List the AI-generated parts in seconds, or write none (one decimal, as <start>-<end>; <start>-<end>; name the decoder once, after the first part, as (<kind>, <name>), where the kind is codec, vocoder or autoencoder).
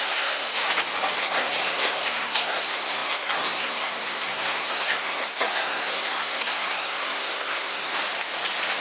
0.0-0.6 (codec, SNAC); 1.2-7.9